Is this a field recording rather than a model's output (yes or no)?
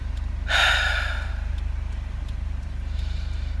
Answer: yes